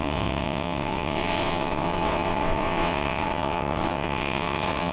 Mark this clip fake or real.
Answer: fake